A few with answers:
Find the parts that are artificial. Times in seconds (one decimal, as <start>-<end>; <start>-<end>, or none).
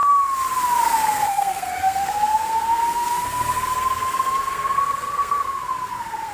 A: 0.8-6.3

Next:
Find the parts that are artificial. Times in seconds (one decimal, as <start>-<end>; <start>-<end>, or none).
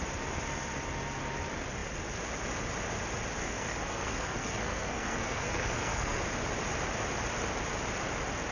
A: 3.4-6.2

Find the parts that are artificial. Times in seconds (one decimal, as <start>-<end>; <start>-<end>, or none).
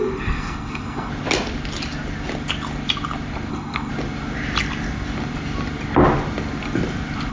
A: 0.0-1.1; 3.5-3.9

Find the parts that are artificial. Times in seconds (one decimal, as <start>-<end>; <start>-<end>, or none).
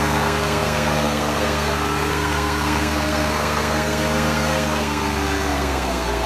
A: 0.0-6.3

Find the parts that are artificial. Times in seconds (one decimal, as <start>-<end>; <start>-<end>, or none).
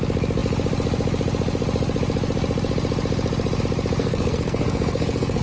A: 4.0-5.4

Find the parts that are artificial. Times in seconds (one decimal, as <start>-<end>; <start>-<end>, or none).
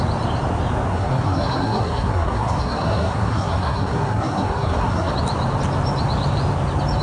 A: 0.9-5.1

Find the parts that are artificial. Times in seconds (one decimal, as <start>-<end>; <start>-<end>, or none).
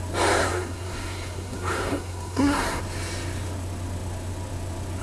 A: 0.4-2.8